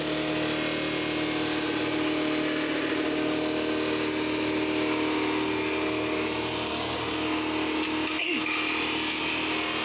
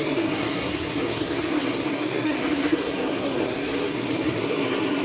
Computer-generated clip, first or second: second